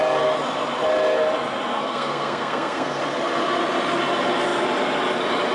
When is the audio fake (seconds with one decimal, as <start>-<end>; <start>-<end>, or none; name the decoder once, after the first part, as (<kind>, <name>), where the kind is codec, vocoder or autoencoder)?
1.7-3.0 (codec, SNAC)